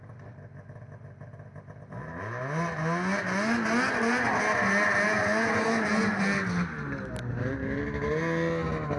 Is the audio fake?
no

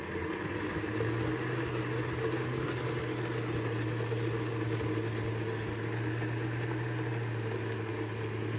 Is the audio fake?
no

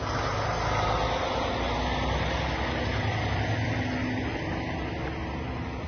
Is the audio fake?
no